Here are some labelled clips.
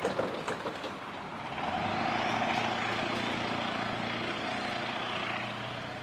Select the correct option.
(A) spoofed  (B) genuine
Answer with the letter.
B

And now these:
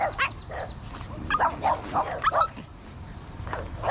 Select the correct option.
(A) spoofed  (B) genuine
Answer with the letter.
B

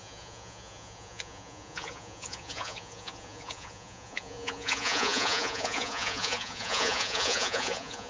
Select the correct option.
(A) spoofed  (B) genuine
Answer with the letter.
A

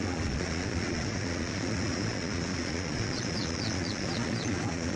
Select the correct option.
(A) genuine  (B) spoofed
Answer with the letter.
B